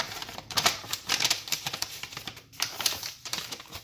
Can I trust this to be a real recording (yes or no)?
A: no